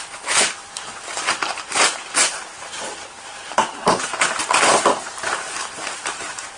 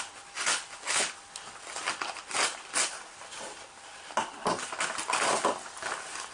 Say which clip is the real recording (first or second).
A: second